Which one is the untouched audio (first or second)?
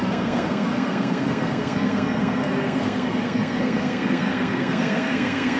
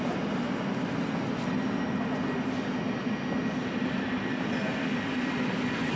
second